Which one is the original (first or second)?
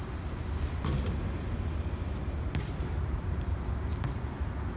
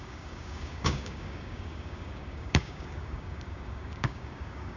first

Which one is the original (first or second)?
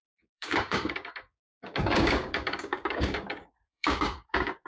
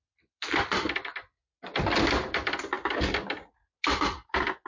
second